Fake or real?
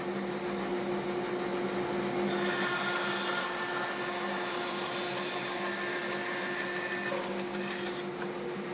real